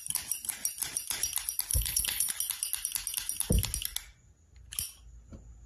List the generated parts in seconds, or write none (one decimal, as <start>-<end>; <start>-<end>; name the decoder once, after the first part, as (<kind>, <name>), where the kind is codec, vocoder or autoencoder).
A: 1.7-2.3 (codec, HILCodec)